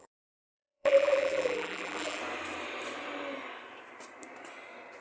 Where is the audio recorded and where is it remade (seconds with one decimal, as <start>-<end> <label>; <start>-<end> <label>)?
0.0-2.2 remade; 2.2-5.0 recorded